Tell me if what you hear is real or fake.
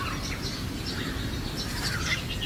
real